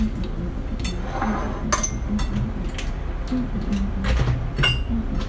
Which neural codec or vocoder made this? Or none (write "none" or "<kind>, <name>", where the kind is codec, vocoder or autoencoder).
none